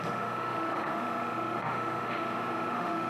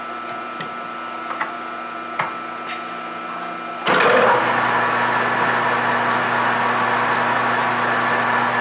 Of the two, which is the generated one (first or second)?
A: first